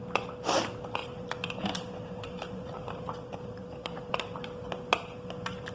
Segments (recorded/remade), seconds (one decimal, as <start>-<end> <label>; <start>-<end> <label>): 0.0-1.0 recorded; 1.0-4.4 remade; 4.4-5.7 recorded